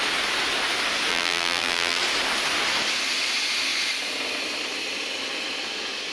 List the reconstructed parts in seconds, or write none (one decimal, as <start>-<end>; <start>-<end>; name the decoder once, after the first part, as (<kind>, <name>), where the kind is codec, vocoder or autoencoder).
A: 1.1-2.0 (vocoder, BigVGAN v2)